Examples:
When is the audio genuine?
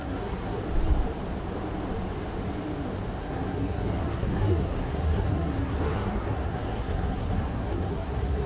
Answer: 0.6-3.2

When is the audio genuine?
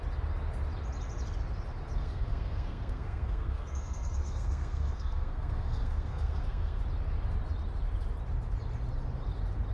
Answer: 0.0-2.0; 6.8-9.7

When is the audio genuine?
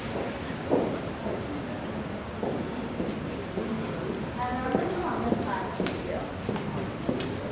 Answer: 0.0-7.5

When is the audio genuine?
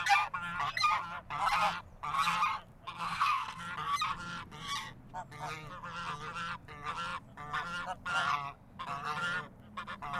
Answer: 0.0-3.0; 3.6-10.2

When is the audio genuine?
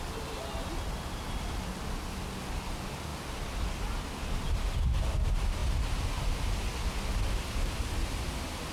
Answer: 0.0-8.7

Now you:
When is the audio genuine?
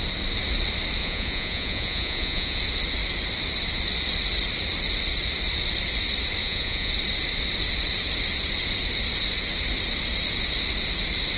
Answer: 0.0-1.0; 2.6-6.4; 6.9-11.4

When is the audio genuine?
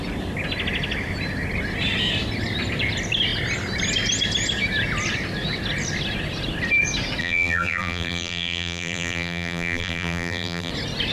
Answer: 0.0-7.2; 10.7-11.1